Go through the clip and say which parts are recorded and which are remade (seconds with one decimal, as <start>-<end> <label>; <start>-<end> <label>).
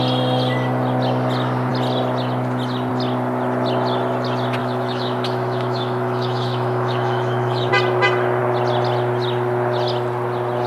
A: 0.0-4.6 recorded; 4.6-7.7 remade; 7.7-10.7 recorded